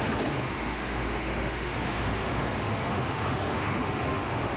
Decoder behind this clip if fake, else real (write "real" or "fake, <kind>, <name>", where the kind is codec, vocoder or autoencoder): fake, autoencoder, DAC-VAE